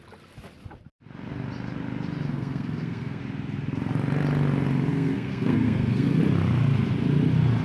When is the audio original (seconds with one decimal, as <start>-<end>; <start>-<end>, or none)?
0.0-2.3; 3.2-4.9; 6.2-7.6